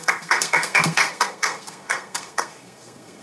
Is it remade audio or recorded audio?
remade